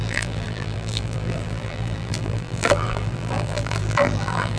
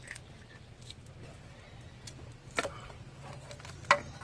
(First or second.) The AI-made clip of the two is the first